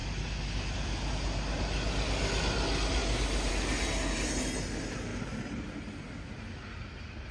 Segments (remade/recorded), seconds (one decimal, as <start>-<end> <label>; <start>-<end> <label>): 0.0-7.3 recorded